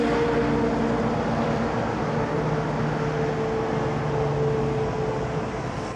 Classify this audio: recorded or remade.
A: recorded